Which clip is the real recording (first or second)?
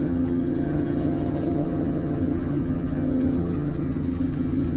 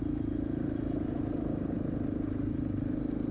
second